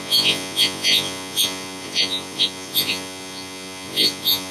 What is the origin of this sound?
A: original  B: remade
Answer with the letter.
B